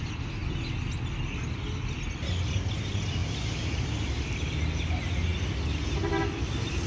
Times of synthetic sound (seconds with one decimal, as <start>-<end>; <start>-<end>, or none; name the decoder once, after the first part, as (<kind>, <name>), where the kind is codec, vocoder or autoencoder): none